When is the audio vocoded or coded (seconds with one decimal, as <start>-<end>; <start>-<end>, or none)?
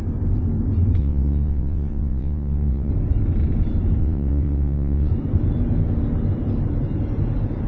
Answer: 1.0-2.9; 4.0-5.1